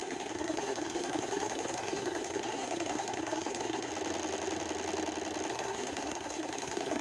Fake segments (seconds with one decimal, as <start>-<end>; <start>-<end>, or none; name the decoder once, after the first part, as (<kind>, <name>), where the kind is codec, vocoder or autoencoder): 0.0-3.9 (codec, SNAC); 5.5-7.0